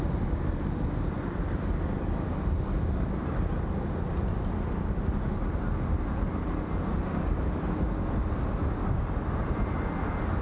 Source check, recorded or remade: recorded